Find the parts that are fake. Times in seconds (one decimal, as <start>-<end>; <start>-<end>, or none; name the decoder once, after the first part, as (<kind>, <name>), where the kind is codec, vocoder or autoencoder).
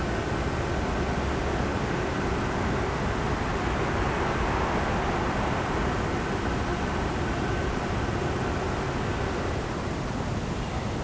1.7-2.3 (vocoder, BigVGAN v2); 6.7-7.8